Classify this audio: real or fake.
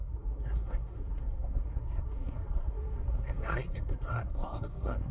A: fake